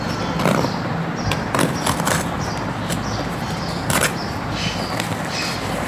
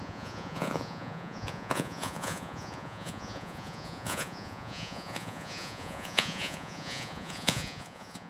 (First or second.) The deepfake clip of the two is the second